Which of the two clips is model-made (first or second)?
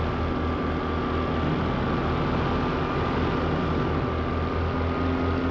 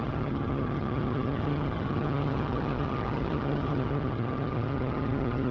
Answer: second